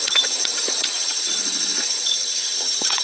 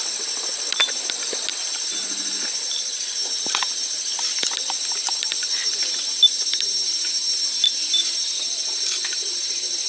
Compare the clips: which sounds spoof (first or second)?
first